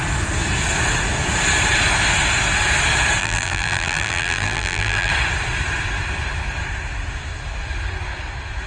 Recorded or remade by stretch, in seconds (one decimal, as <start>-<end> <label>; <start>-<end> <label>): 0.0-3.2 recorded; 3.2-5.1 remade; 5.1-8.7 recorded